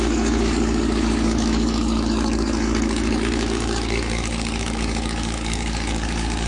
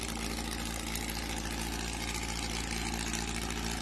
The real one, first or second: second